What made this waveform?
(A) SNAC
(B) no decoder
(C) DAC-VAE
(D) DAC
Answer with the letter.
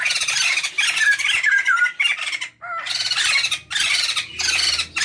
B